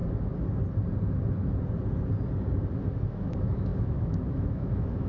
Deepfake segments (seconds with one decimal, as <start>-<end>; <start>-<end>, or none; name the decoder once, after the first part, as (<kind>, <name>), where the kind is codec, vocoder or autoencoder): 3.1-5.1 (autoencoder, DAC-VAE)